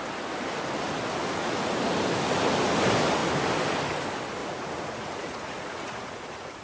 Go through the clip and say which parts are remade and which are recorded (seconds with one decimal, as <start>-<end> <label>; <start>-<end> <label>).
0.0-1.2 recorded; 1.2-1.7 remade; 1.7-4.4 recorded; 4.4-6.6 remade